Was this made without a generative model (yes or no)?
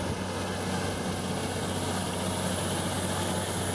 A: yes